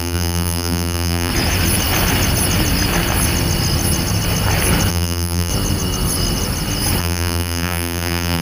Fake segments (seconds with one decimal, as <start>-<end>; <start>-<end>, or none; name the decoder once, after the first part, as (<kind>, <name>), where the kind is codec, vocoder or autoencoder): 0.0-1.3 (vocoder, BigVGAN v2); 4.9-5.5; 7.0-8.4